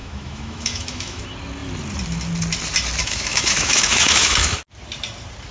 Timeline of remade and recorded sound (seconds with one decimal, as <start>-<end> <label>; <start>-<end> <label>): 0.0-1.2 remade; 1.2-3.0 recorded; 3.0-4.6 remade; 4.6-5.5 recorded